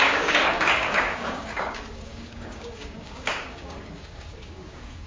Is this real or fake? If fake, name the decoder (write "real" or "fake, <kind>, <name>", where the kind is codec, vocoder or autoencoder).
fake, codec, DAC